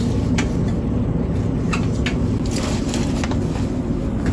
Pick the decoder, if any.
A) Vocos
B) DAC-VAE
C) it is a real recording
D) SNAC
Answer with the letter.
C